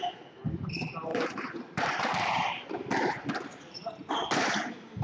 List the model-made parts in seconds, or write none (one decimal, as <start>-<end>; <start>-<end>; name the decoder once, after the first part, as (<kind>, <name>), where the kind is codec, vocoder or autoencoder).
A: 1.1-4.1 (vocoder, BigVGAN v2)